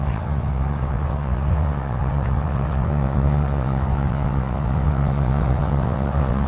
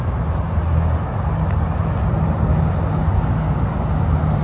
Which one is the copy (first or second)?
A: first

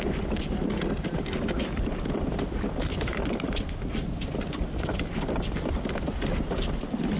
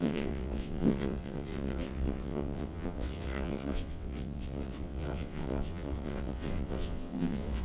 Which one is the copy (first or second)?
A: second